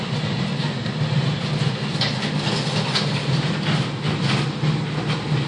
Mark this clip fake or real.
real